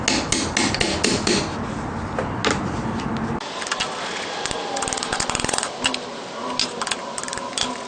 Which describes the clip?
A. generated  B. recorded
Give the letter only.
B